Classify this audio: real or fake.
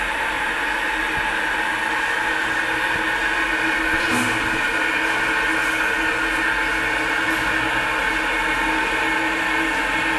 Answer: real